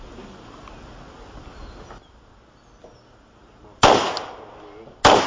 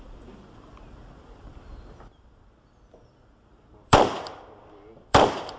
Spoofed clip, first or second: second